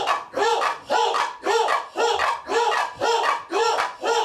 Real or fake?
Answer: real